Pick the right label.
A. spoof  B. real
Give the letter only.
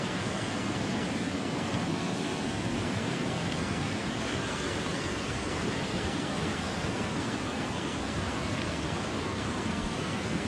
A